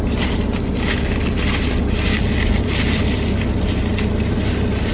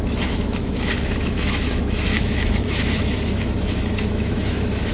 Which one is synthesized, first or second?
second